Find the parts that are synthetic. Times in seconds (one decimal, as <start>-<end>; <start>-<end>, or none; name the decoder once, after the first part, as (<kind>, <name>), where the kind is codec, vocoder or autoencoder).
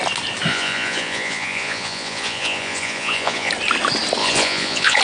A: 0.5-3.5 (vocoder, Vocos); 4.2-5.0